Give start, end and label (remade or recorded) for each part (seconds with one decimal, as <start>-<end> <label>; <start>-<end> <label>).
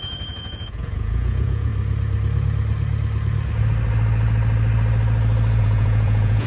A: 0.0-1.7 remade; 1.7-5.6 recorded; 5.6-6.5 remade